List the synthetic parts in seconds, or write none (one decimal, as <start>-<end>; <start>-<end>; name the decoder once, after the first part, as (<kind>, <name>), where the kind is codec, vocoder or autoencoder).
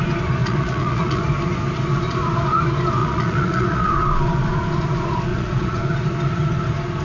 0.4-1.2 (vocoder, Vocos); 3.0-3.9; 5.3-5.8